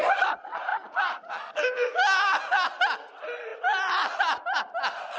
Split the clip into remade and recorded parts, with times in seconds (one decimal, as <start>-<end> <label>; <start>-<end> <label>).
0.0-5.2 recorded